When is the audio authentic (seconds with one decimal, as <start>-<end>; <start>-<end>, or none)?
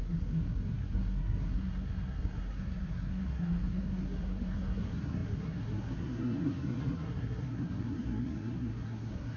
none